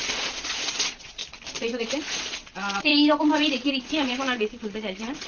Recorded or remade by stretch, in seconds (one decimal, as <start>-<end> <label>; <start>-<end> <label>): 0.0-1.2 remade; 1.2-1.9 recorded; 1.9-2.9 remade; 2.9-3.7 recorded; 3.7-5.3 remade